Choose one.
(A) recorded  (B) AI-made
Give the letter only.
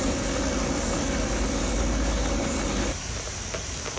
A